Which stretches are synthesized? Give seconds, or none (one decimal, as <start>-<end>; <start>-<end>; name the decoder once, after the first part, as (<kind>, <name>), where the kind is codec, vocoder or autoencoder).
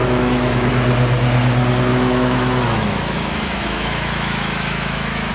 0.0-0.7 (autoencoder, DAC-VAE); 1.9-5.3